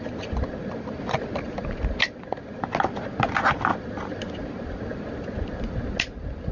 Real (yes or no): yes